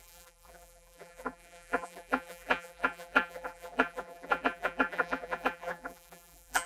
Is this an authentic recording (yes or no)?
no